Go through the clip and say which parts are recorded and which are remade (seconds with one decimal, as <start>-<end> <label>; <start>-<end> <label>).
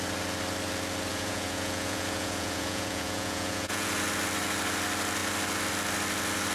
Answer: 0.0-1.1 recorded; 1.1-3.9 remade; 3.9-6.5 recorded